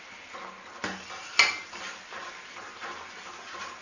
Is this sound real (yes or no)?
yes